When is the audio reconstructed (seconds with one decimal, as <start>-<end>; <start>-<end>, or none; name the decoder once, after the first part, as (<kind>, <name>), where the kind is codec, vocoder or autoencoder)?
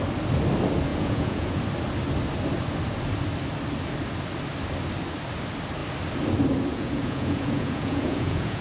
0.9-1.6 (vocoder, Vocos); 6.7-8.6